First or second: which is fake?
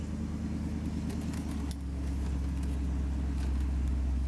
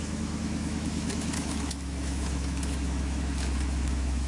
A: second